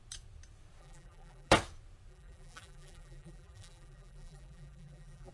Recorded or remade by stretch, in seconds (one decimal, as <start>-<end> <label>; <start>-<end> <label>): 0.0-0.8 recorded; 0.8-1.5 remade; 1.5-2.1 recorded; 2.1-5.3 remade

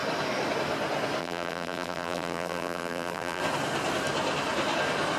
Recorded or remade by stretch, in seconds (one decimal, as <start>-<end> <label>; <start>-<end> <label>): 0.0-1.2 recorded; 1.2-3.4 remade; 3.4-5.2 recorded